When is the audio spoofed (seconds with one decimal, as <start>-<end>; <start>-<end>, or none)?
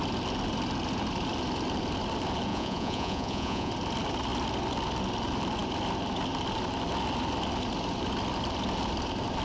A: 2.5-3.7